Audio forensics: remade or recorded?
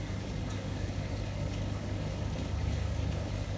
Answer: remade